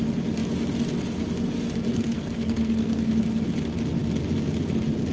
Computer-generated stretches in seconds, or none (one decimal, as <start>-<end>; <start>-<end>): 1.9-3.1